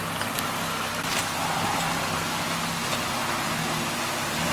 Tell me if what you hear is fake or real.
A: real